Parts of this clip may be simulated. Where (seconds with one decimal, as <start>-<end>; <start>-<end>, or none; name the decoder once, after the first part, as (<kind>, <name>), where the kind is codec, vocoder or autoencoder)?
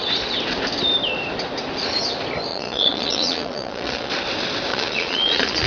2.5-4.1 (vocoder, Vocos); 4.7-5.7